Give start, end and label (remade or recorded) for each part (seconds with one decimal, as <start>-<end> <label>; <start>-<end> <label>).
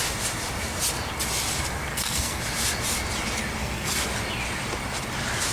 0.0-1.9 recorded; 1.9-2.4 remade; 2.4-3.6 recorded; 3.6-4.1 remade; 4.1-5.5 recorded